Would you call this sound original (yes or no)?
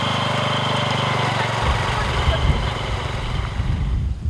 yes